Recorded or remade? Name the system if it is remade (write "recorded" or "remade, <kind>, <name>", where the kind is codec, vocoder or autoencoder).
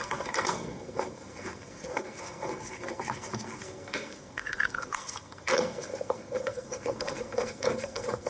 remade, codec, SNAC